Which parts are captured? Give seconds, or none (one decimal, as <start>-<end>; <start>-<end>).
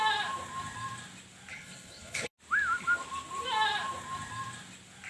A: 0.0-1.5; 2.3-5.1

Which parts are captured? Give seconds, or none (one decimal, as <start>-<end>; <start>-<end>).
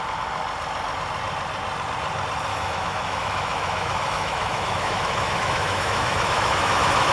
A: 0.0-2.5